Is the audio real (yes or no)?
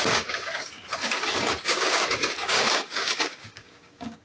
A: no